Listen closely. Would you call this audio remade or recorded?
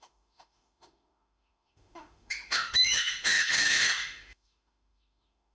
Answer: remade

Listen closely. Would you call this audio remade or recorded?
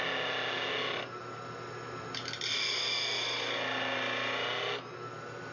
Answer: recorded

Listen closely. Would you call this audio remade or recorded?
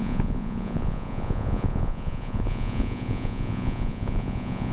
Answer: remade